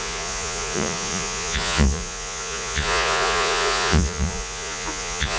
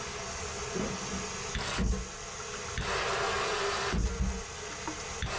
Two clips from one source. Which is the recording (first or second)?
second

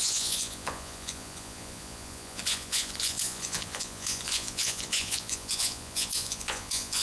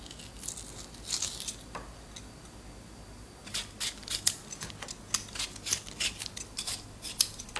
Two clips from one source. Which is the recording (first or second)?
second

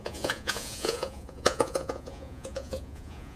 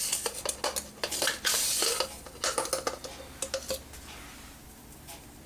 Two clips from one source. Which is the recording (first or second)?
second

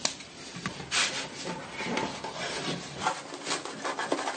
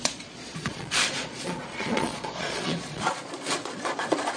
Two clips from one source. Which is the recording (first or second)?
first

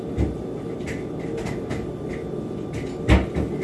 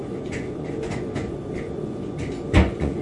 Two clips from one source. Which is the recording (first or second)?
first